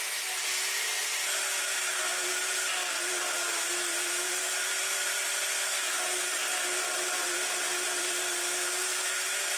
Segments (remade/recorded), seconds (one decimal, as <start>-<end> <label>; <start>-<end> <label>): 0.0-9.6 remade